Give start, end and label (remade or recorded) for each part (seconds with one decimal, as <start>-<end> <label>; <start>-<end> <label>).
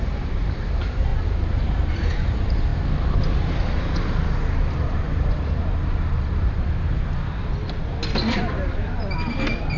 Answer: 0.0-1.1 remade; 1.1-1.9 recorded; 1.9-8.0 remade; 8.0-9.8 recorded